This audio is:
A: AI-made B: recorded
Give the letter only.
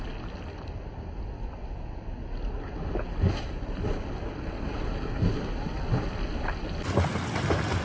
B